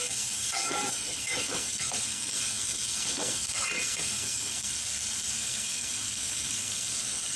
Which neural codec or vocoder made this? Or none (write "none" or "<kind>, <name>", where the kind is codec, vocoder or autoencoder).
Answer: codec, SNAC